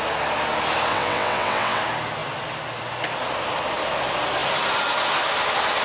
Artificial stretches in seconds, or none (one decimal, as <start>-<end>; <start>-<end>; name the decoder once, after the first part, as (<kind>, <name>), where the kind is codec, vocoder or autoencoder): 0.9-1.8 (vocoder, WaveNeXt)